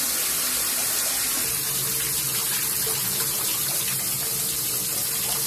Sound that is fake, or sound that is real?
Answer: real